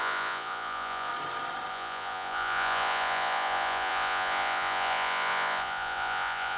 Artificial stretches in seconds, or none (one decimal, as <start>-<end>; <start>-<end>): 0.0-1.1; 1.7-6.6